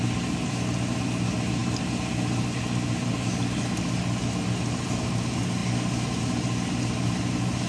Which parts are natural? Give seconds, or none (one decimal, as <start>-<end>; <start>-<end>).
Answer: 0.0-7.7